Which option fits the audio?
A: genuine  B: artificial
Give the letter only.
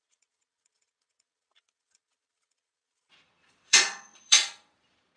B